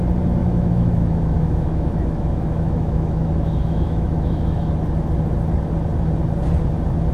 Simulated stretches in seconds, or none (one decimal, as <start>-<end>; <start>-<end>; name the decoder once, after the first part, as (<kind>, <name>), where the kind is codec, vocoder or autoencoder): 0.4-4.7 (autoencoder, DAC-VAE)